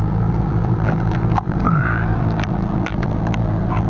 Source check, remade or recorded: remade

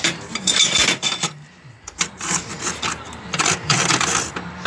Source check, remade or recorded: remade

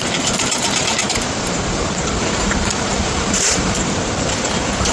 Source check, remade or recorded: remade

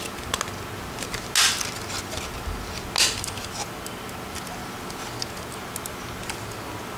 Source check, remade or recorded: recorded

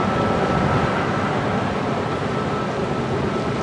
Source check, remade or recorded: recorded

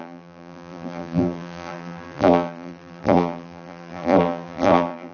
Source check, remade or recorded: remade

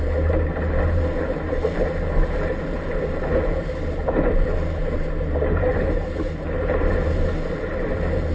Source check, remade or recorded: remade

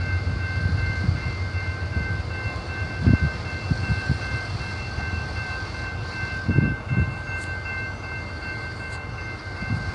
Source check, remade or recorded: remade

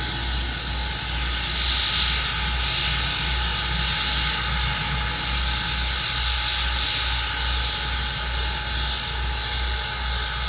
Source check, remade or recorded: recorded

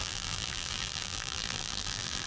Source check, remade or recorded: remade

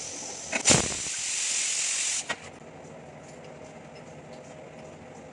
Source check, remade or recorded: recorded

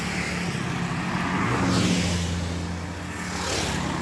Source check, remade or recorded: recorded